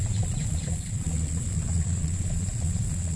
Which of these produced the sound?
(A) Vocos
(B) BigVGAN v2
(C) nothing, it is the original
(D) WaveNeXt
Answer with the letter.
A